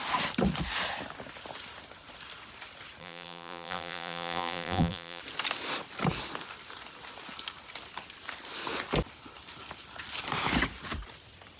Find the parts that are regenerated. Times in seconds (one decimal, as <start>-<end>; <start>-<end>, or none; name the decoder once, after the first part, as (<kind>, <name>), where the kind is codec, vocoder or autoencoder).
3.0-5.2 (vocoder, BigVGAN v2)